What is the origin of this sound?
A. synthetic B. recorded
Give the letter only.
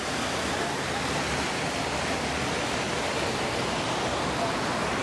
B